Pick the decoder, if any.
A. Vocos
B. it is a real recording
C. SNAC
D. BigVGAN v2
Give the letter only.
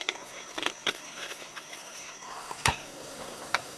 C